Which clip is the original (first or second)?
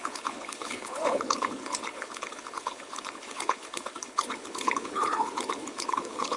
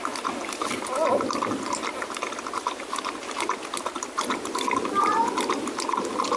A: second